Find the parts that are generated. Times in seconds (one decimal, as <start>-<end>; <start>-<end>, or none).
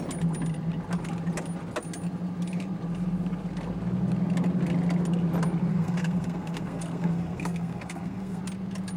5.7-8.4